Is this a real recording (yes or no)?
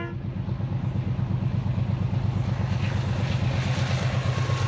yes